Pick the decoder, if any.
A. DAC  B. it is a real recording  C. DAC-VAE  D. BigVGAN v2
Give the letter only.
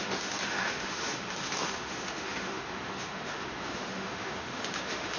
C